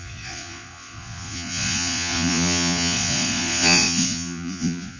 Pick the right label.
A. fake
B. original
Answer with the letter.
A